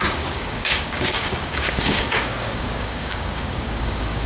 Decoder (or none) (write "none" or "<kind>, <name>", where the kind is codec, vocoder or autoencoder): codec, DAC